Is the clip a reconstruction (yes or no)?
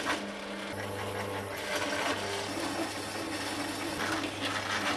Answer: no